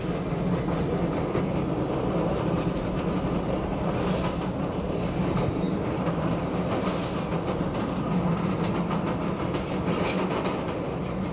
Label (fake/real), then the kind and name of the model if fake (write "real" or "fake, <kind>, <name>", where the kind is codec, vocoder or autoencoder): real